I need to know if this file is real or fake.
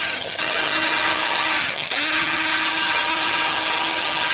fake